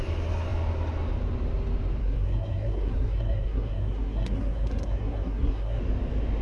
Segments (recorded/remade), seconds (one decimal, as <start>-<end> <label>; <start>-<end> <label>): 0.0-2.0 recorded; 2.0-5.8 remade; 5.8-6.4 recorded